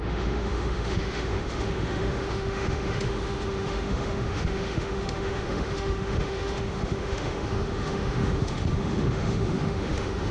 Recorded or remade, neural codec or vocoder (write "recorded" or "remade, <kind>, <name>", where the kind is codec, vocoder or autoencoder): remade, autoencoder, DAC-VAE